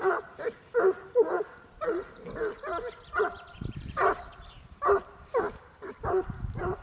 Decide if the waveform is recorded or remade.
remade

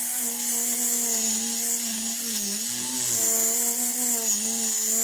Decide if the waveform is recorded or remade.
recorded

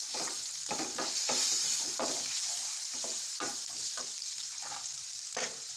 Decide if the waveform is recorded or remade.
remade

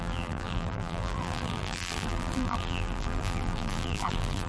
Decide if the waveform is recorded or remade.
remade